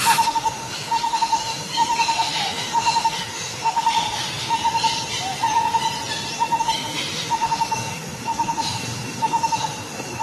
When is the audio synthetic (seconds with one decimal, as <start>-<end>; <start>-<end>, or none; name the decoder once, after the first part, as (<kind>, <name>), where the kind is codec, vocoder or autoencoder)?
0.0-4.6 (autoencoder, DAC-VAE); 6.6-10.2